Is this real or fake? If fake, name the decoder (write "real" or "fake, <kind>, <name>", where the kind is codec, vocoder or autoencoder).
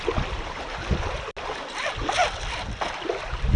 real